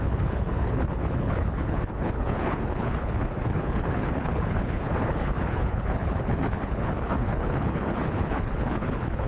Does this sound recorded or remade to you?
remade